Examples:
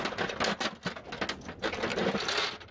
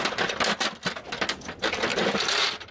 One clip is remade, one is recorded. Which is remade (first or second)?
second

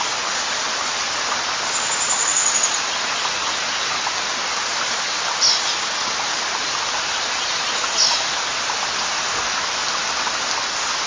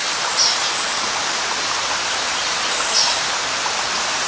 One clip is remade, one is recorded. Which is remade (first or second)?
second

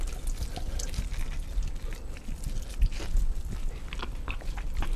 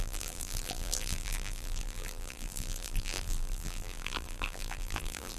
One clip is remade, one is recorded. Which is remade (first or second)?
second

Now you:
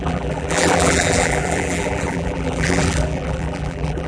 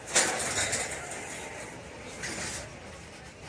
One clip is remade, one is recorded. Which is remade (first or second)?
first